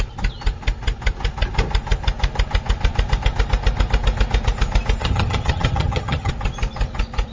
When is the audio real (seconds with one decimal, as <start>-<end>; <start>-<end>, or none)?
0.0-5.0; 6.3-7.3